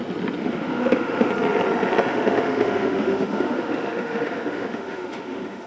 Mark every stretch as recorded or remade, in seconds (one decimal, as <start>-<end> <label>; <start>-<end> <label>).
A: 0.0-0.4 recorded; 0.4-1.3 remade; 1.3-2.1 recorded; 2.1-5.7 remade